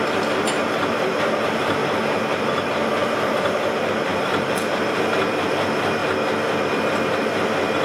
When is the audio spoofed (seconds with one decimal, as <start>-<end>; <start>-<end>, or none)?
0.0-6.0; 6.5-7.8